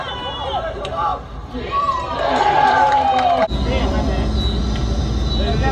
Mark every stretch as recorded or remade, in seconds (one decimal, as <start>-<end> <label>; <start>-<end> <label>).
0.0-1.1 recorded; 1.1-3.4 remade; 3.4-5.7 recorded